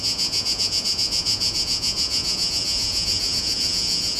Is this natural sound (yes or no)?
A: no